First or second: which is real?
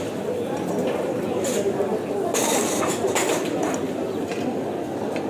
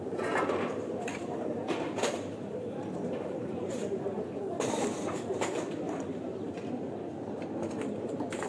first